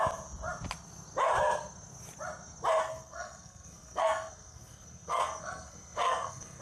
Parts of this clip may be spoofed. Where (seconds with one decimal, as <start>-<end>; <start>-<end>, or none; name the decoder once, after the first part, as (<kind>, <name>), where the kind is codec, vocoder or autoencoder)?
2.8-6.6 (codec, SNAC)